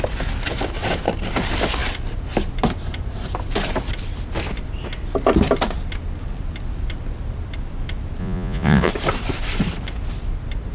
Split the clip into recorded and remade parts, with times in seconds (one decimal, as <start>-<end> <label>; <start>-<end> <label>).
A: 0.0-8.2 recorded; 8.2-8.9 remade; 8.9-10.7 recorded